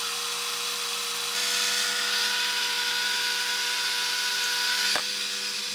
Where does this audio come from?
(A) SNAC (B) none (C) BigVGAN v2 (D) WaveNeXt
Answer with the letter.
B